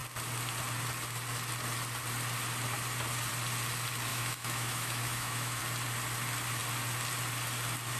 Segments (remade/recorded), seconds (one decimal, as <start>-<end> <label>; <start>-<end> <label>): 0.0-4.1 recorded; 4.1-5.6 remade; 5.6-8.0 recorded

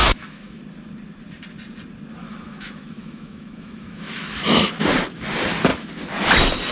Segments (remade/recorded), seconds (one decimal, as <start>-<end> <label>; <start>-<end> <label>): 0.0-0.6 remade; 0.6-2.2 recorded; 2.2-4.7 remade; 4.7-6.7 recorded

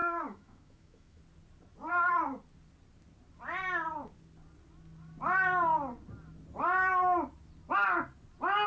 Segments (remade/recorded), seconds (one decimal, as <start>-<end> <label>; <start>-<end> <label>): 0.0-1.2 remade; 1.2-8.7 recorded

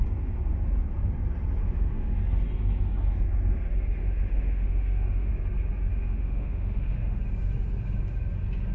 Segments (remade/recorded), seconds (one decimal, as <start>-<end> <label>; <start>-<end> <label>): 0.0-1.6 recorded; 1.6-2.2 remade; 2.2-4.0 recorded; 4.0-5.3 remade; 5.3-5.9 recorded; 5.9-7.2 remade; 7.2-8.7 recorded

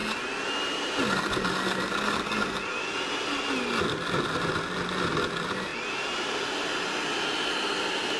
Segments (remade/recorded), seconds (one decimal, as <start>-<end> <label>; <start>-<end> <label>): 0.0-8.2 recorded